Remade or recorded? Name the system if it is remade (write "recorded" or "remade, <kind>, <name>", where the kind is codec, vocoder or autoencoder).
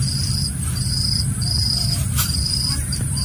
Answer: remade, vocoder, BigVGAN v2